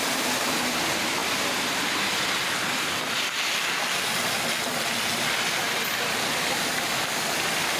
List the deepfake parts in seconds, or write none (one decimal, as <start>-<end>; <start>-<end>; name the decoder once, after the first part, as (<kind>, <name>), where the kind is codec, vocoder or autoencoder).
none